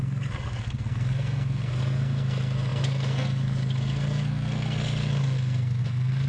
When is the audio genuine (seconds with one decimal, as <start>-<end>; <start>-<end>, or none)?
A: none